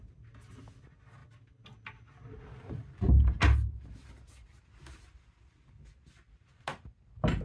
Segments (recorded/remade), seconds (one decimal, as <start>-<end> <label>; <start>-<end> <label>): 0.0-7.4 recorded